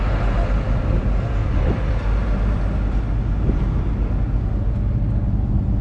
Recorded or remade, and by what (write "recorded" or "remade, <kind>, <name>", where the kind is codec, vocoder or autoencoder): recorded